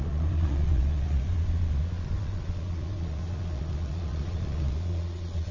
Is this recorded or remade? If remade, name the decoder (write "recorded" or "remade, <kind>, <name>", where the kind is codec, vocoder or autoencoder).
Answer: remade, vocoder, Vocos